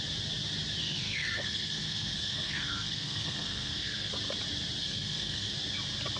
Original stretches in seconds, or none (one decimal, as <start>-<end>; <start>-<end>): 0.0-0.8; 4.1-4.8; 5.5-6.2